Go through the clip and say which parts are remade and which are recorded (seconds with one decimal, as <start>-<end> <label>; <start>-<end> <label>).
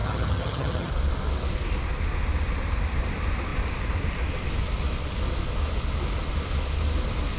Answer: 0.0-0.9 remade; 0.9-7.4 recorded